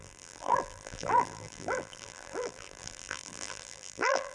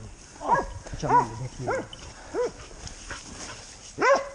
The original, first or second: second